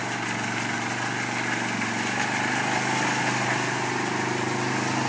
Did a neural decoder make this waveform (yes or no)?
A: no